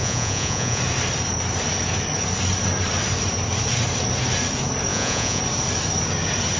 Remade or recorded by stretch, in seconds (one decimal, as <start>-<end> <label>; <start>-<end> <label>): 0.0-0.8 remade; 0.8-4.9 recorded; 4.9-5.4 remade; 5.4-6.6 recorded